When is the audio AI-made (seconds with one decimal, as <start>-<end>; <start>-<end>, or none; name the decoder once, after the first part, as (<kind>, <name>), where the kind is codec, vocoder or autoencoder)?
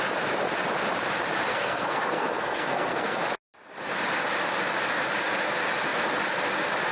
1.5-3.2 (codec, SNAC)